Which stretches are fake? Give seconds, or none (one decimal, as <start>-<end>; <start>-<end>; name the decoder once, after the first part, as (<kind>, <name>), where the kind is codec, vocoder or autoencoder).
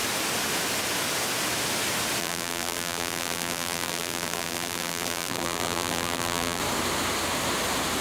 2.2-6.6 (vocoder, BigVGAN v2)